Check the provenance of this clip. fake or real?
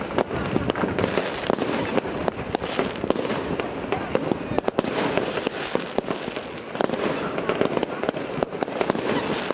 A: real